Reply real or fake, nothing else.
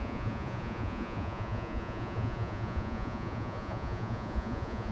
fake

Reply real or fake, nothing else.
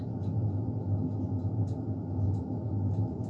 real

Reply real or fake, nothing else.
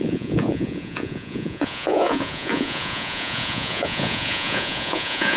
fake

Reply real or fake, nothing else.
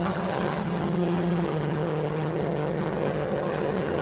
fake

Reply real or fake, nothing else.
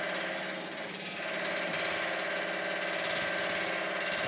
real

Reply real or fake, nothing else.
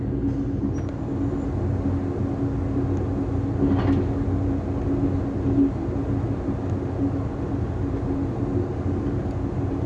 real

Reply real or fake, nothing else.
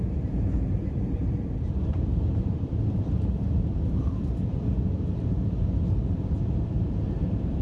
fake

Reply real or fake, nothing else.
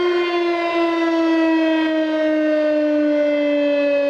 real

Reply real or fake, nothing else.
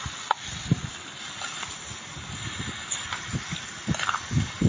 real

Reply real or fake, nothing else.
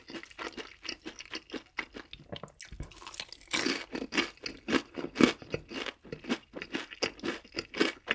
real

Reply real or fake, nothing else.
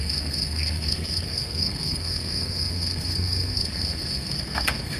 fake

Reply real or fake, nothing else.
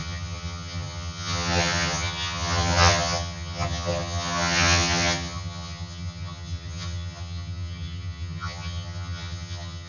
fake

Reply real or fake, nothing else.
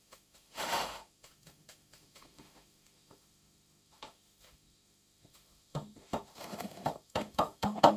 fake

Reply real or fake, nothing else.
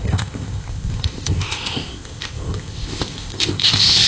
fake